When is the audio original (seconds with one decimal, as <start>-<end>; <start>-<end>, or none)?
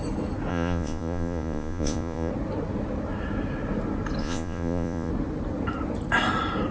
0.0-0.5; 2.3-4.2; 5.1-6.7